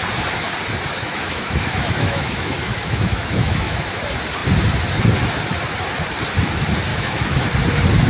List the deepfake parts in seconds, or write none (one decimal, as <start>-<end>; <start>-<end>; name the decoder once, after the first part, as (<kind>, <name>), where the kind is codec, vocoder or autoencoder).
0.9-4.0 (autoencoder, DAC-VAE); 6.9-7.5